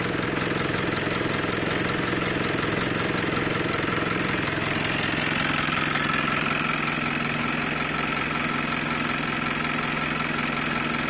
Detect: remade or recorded recorded